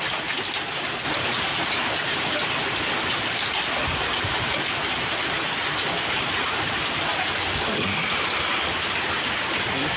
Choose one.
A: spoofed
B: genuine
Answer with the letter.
B